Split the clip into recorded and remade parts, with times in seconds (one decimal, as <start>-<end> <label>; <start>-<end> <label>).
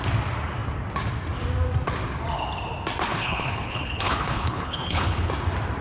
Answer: 0.0-3.1 recorded; 3.1-5.3 remade; 5.3-5.8 recorded